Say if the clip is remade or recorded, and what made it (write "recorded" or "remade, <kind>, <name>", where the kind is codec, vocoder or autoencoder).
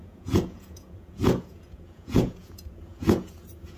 remade, vocoder, Vocos